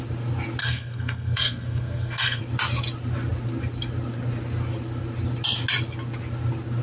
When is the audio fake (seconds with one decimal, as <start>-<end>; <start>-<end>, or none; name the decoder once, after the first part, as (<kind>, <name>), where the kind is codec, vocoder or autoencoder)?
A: 0.6-2.4 (codec, SNAC)